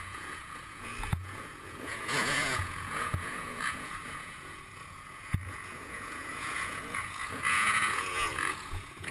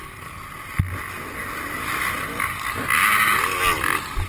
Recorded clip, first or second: second